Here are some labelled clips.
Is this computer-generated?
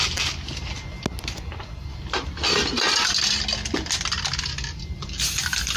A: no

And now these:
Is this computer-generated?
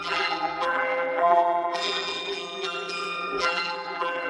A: yes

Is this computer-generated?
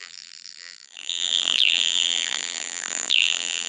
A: yes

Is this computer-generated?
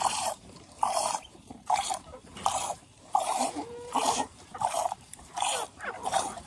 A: yes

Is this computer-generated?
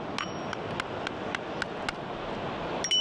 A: no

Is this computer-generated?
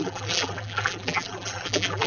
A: yes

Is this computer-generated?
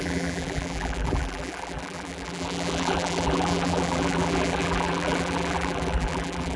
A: yes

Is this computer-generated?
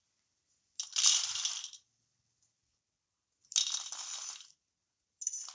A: no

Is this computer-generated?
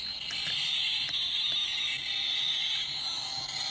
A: no